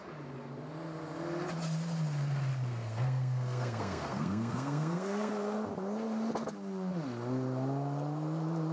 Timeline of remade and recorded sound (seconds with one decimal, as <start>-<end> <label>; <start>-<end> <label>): 0.0-2.5 recorded; 2.5-5.3 remade; 5.3-8.7 recorded

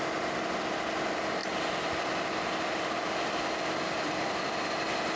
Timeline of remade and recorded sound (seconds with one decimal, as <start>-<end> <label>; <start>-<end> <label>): 0.0-5.2 recorded

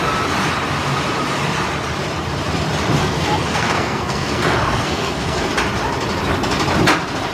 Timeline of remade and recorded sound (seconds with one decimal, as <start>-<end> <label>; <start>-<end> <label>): 0.0-3.0 recorded; 3.0-5.5 remade; 5.5-7.3 recorded

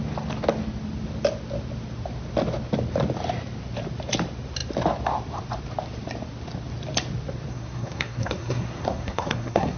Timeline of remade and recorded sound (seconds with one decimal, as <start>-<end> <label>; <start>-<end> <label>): 0.0-7.5 recorded; 7.5-9.8 remade

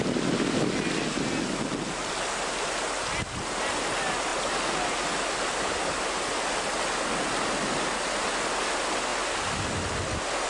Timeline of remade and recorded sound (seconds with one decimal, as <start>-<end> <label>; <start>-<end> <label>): 0.0-10.5 recorded

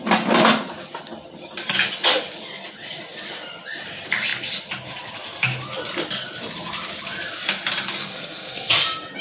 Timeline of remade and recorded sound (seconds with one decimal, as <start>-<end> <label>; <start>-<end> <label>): 0.0-8.0 recorded; 8.0-8.7 remade; 8.7-9.2 recorded

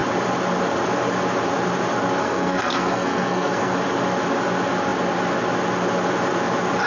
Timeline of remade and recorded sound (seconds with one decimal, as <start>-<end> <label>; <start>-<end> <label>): 0.0-2.2 recorded; 2.2-3.7 remade; 3.7-6.9 recorded